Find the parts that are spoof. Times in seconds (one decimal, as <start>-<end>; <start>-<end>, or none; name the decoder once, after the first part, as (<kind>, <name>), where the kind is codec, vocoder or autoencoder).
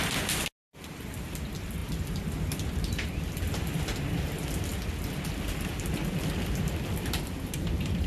none